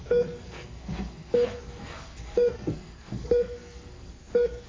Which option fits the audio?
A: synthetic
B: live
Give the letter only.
A